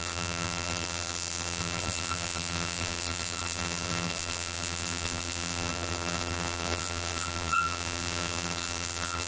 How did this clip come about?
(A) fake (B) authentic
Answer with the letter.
A